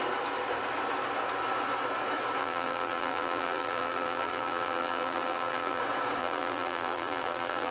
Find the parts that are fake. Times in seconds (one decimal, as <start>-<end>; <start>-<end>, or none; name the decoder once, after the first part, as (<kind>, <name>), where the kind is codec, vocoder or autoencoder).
2.4-5.8 (vocoder, BigVGAN v2); 6.2-7.7